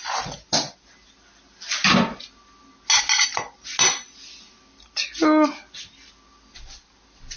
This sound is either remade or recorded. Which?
recorded